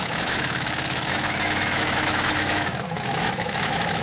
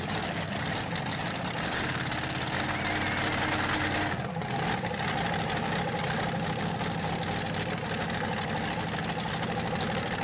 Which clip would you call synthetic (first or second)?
first